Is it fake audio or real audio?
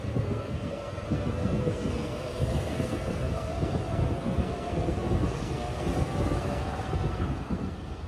fake